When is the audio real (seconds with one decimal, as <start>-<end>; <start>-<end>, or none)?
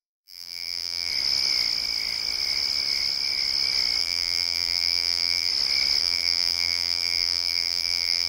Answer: 1.1-4.0; 5.5-6.0